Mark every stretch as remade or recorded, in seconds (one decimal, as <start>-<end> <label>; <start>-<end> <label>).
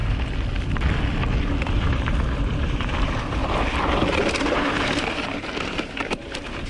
0.0-1.7 recorded; 1.7-3.4 remade; 3.4-4.4 recorded; 4.4-6.7 remade